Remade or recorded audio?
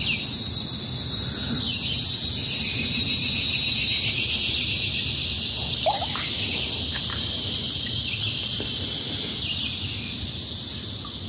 recorded